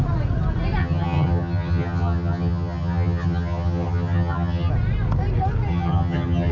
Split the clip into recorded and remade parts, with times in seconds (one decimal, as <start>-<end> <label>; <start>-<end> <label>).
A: 0.0-0.8 recorded; 0.8-4.7 remade; 4.7-5.7 recorded; 5.7-6.5 remade